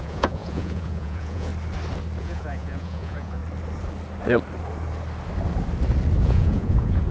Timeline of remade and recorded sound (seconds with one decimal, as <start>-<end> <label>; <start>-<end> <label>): 0.0-1.5 remade; 1.5-2.2 recorded; 2.2-3.4 remade; 3.4-6.2 recorded; 6.2-7.1 remade